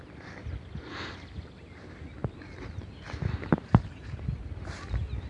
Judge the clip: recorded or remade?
recorded